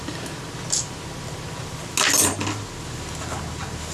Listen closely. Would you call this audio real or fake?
real